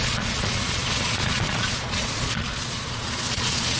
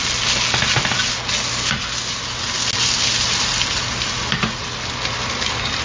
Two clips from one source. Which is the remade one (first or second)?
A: first